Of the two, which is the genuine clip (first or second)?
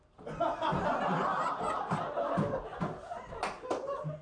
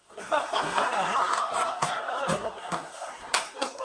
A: first